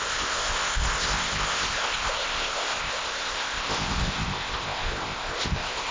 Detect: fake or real fake